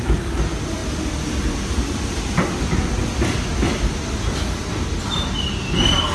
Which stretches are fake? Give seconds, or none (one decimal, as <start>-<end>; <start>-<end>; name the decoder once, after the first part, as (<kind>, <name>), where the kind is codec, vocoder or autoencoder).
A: none

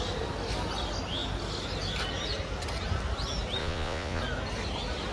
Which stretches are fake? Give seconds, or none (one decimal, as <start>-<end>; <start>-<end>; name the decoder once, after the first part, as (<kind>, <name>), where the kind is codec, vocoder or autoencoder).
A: 3.6-4.2 (vocoder, Vocos)

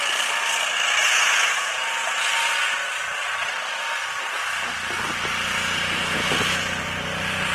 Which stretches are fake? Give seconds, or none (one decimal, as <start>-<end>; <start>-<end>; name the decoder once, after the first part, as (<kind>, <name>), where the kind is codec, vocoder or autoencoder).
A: 1.0-1.8 (vocoder, Vocos)

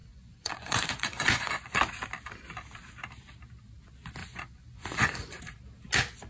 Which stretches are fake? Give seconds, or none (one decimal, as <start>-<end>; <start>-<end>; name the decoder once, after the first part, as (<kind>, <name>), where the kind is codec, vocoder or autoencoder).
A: 0.0-1.8 (vocoder, Vocos); 4.2-5.4

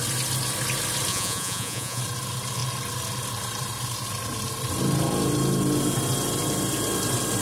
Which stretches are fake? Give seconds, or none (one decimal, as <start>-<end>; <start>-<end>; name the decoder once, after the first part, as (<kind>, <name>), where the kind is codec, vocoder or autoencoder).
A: 1.1-2.0 (vocoder, Vocos)

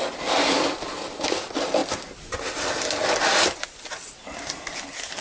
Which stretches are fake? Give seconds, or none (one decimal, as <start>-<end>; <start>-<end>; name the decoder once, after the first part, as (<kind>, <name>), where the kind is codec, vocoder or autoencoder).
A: none